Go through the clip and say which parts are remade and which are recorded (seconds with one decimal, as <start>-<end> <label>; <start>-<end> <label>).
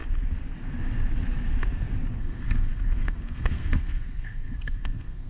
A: 0.0-2.2 recorded; 2.2-5.3 remade